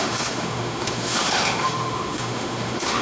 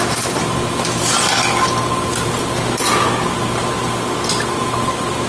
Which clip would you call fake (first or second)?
first